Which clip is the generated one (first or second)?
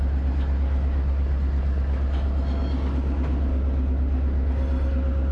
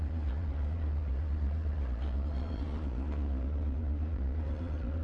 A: second